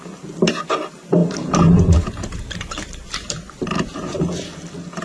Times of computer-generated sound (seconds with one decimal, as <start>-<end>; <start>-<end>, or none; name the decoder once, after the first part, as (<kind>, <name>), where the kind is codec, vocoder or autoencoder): 1.2-4.2 (vocoder, BigVGAN v2)